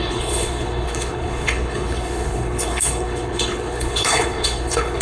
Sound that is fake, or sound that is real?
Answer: fake